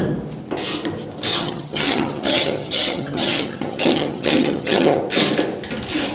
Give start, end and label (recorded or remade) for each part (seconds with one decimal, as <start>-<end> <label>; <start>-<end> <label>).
0.0-1.3 recorded; 1.3-5.0 remade; 5.0-6.1 recorded